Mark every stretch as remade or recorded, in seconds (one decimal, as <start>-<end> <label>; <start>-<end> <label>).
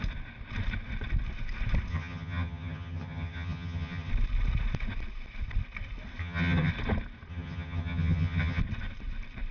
0.0-1.9 recorded; 1.9-4.1 remade; 4.1-6.2 recorded; 6.2-6.7 remade; 6.7-7.3 recorded; 7.3-8.6 remade; 8.6-9.5 recorded